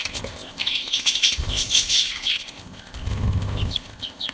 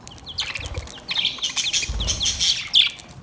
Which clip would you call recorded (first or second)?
second